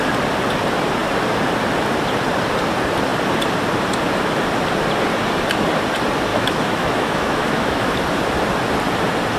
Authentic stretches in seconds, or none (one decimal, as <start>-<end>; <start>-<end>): 0.0-6.3; 7.9-9.4